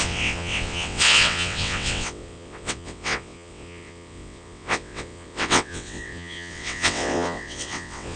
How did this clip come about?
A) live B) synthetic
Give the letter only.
B